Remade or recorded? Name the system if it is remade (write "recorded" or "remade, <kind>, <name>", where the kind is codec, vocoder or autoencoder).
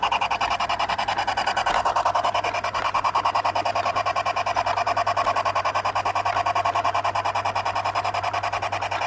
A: recorded